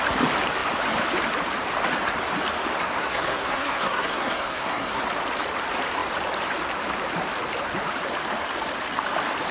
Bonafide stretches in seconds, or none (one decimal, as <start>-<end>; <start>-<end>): 0.0-2.8; 5.0-9.5